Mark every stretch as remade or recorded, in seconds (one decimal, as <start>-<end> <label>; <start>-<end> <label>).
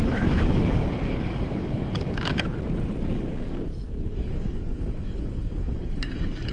0.0-2.3 remade; 2.3-3.0 recorded; 3.0-6.5 remade